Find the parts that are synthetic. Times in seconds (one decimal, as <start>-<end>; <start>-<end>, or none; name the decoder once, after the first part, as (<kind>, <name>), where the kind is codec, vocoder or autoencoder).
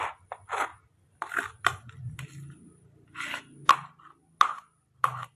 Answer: none